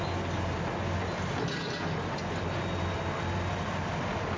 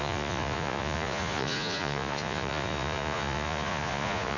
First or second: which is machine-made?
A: second